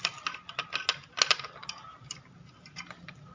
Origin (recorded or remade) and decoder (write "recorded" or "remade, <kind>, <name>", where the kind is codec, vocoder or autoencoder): recorded